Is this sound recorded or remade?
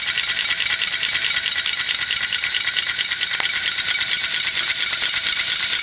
recorded